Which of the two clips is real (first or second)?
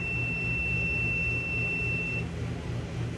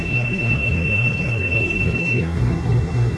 first